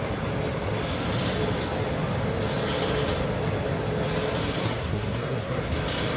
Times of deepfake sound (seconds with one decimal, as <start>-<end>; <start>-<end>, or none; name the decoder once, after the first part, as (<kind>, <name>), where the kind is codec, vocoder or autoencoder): 4.6-5.6 (codec, SNAC)